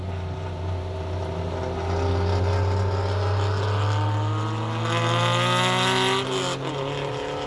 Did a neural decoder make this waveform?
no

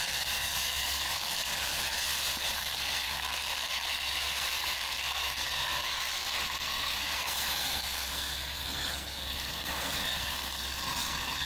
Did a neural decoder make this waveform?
yes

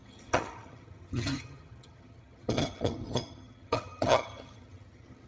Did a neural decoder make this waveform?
yes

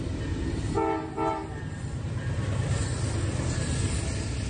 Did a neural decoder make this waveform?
no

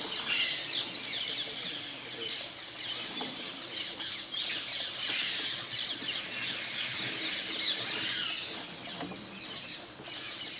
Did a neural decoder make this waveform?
no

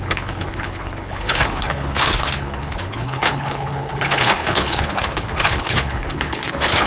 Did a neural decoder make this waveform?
yes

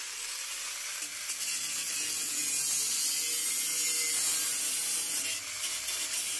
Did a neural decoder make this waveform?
no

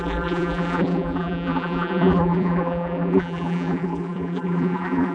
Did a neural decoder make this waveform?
yes